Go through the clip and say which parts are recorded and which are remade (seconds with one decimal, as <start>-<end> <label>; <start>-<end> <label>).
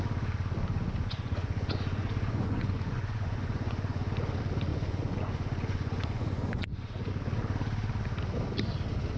0.0-0.7 recorded; 0.7-4.1 remade; 4.1-4.7 recorded; 4.7-7.1 remade; 7.1-9.2 recorded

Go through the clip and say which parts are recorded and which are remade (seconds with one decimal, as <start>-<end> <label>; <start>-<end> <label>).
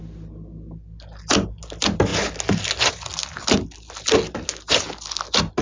0.0-5.6 recorded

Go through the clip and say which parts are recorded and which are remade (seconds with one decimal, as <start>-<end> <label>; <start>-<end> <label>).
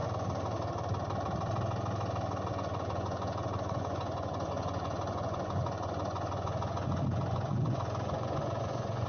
0.0-2.5 recorded; 2.5-9.1 remade